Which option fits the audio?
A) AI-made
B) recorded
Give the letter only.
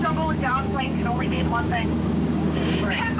A